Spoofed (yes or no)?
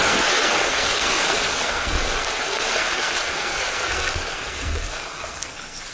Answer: yes